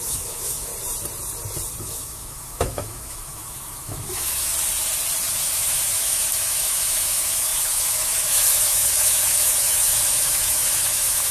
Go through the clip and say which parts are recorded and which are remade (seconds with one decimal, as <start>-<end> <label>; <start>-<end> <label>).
0.0-0.7 remade; 0.7-1.8 recorded; 1.8-4.5 remade; 4.5-5.2 recorded; 5.2-11.3 remade